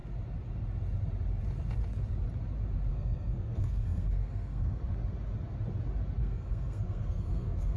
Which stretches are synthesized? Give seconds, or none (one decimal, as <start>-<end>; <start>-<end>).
2.9-4.8; 6.2-7.8

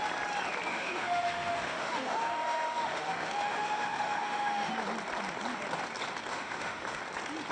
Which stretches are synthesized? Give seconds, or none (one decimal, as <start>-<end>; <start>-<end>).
0.7-4.7; 6.3-7.0